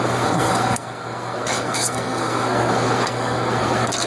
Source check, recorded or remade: remade